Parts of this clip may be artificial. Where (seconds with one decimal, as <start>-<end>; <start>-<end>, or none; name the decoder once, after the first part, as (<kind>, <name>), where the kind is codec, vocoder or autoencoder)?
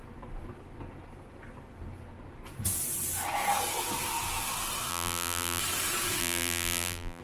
4.9-5.6 (vocoder, BigVGAN v2); 6.2-7.2